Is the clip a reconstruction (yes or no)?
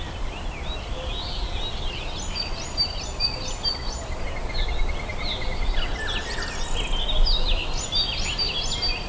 no